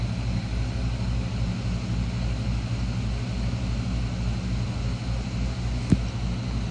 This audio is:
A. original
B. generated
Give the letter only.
A